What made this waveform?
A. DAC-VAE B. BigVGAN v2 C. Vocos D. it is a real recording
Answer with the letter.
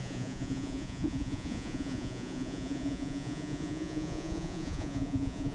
C